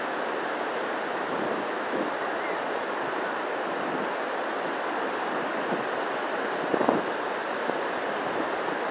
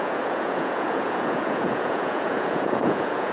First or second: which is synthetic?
second